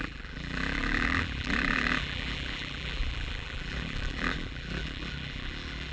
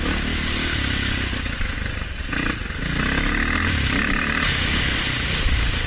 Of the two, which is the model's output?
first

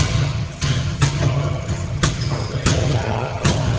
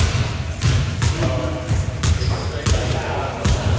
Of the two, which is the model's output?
first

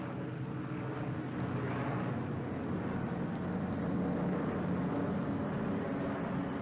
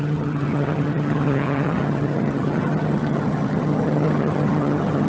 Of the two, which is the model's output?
second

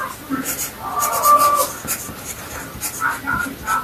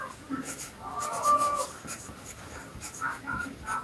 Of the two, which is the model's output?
second